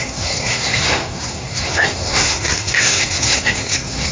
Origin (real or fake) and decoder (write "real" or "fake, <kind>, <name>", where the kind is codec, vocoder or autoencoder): fake, codec, SNAC